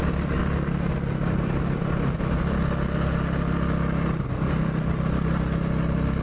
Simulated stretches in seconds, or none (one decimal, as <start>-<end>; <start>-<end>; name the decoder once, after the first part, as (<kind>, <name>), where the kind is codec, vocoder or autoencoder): none